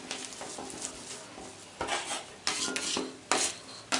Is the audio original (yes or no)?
yes